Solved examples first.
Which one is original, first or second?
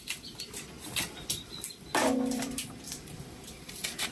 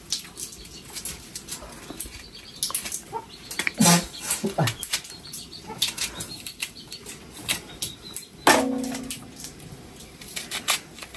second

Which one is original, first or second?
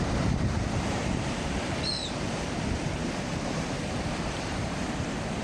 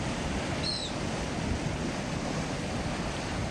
second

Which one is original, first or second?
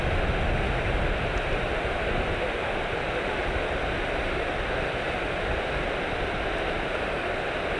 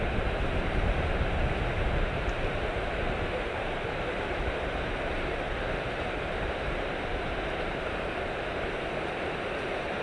first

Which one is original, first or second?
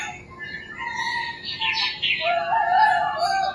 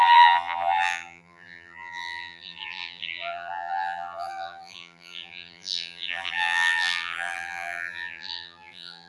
first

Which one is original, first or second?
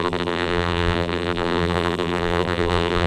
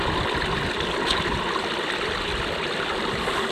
second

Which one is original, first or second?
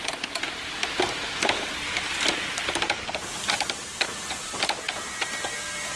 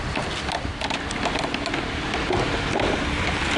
second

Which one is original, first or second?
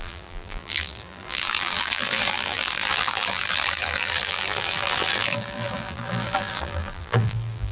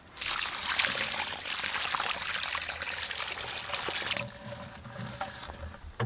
second